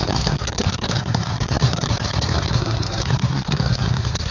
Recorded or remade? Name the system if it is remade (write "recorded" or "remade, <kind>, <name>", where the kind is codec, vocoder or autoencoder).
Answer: remade, codec, SNAC